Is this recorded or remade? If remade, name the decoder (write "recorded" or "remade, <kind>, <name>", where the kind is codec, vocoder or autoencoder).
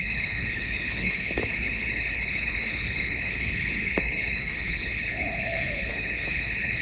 remade, codec, HILCodec